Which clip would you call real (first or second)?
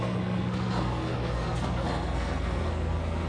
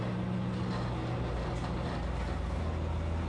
second